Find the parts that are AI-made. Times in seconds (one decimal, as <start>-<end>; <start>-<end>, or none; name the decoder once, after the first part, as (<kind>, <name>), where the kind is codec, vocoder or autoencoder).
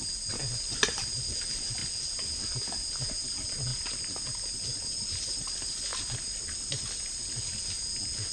none